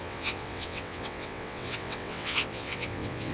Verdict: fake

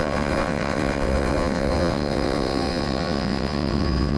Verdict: fake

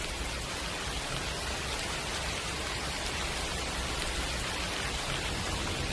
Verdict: real